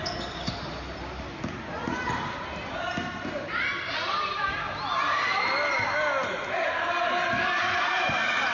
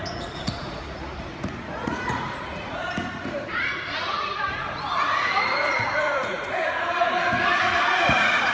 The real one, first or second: first